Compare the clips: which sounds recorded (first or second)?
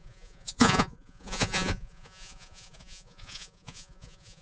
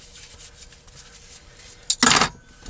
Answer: second